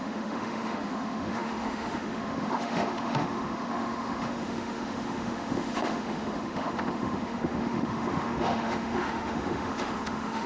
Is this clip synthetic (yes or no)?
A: yes